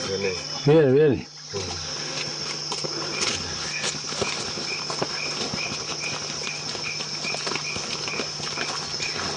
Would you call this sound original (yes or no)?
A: yes